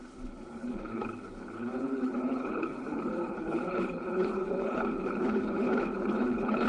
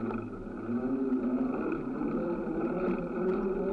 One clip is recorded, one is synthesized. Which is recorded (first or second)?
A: second